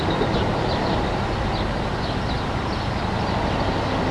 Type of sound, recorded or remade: recorded